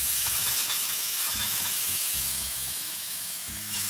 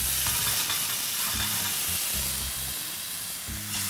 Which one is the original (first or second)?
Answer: second